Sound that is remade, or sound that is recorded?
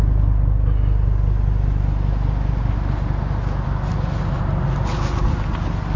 recorded